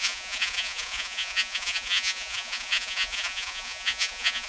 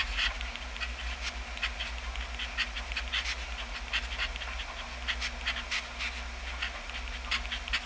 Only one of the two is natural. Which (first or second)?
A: second